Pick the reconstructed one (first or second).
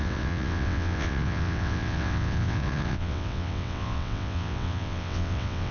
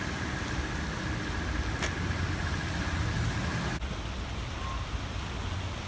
first